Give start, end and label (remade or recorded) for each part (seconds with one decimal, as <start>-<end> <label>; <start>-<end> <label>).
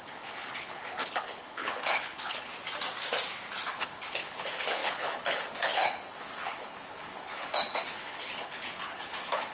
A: 0.0-2.5 remade; 2.5-3.7 recorded; 3.7-9.5 remade